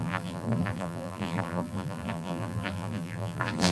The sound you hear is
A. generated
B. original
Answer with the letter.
A